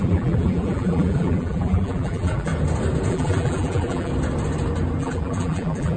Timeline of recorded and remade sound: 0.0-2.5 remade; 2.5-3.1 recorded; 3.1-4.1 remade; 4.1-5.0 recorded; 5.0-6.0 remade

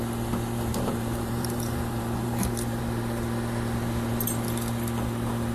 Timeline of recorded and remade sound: 0.0-0.7 recorded; 0.7-2.8 remade; 2.8-5.5 recorded

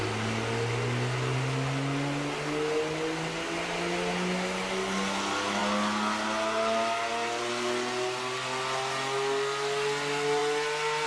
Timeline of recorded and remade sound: 0.0-11.1 recorded

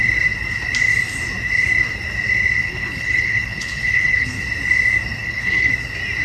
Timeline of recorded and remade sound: 0.0-2.6 recorded; 2.6-4.4 remade; 4.4-5.2 recorded; 5.2-5.7 remade; 5.7-6.2 recorded

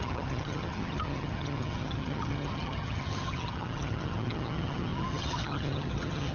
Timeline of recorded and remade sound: 0.0-6.3 remade